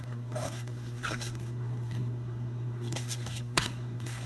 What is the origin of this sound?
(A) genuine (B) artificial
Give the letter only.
B